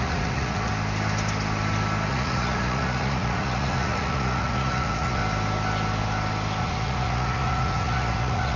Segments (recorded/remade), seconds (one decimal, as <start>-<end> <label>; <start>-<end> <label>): 0.0-0.7 remade; 0.7-2.1 recorded; 2.1-5.2 remade; 5.2-6.6 recorded; 6.6-8.6 remade